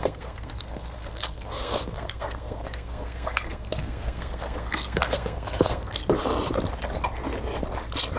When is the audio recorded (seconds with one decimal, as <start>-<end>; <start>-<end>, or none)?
6.0-8.2